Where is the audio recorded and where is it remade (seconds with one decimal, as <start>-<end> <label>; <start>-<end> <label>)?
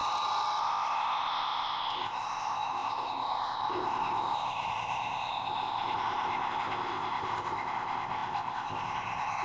0.0-0.6 recorded; 0.6-9.4 remade